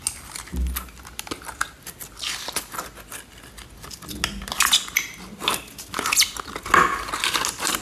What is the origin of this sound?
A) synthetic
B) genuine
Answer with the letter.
B